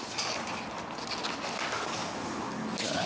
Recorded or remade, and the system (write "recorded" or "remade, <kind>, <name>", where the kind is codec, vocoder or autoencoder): recorded